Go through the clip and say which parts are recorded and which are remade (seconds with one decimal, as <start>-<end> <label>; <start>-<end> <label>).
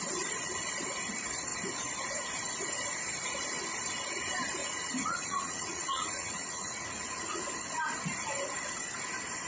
0.0-4.6 recorded; 4.6-7.5 remade; 7.5-9.5 recorded